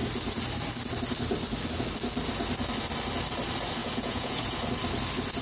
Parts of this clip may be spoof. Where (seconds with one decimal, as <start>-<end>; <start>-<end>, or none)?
3.8-4.6

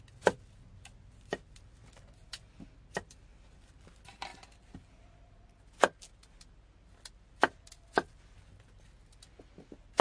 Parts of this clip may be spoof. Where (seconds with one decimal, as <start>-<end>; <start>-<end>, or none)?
none

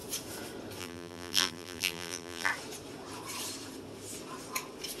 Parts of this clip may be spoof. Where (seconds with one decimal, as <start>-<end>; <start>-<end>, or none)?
0.8-2.5

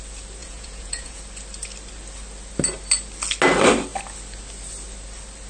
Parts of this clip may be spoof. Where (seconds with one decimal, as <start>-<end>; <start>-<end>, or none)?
0.4-1.2